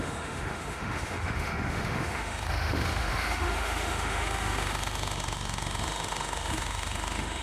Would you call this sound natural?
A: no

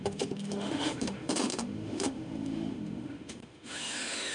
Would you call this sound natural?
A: no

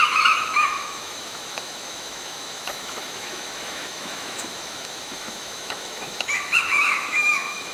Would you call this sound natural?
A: no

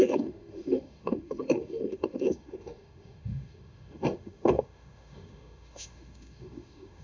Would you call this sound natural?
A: no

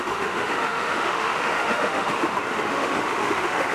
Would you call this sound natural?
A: no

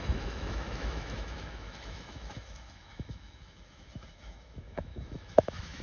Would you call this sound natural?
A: no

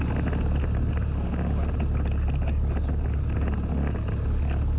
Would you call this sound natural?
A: yes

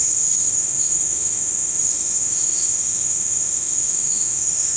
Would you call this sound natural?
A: no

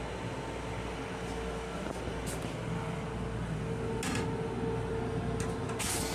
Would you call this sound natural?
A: yes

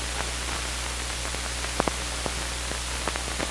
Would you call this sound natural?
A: yes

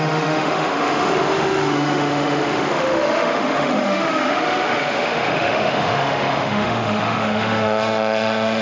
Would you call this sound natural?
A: no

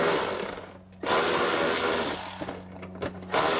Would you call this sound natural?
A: yes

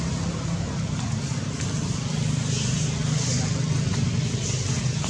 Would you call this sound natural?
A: yes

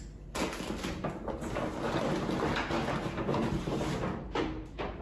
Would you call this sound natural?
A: yes